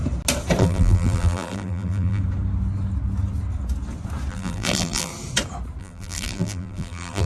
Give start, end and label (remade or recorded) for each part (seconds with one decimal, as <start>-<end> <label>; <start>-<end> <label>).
0.0-0.6 recorded; 0.6-2.2 remade; 2.2-4.3 recorded; 4.3-5.1 remade; 5.1-5.8 recorded; 5.8-7.3 remade